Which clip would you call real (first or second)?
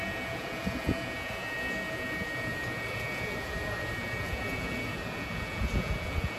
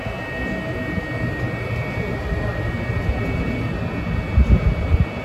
second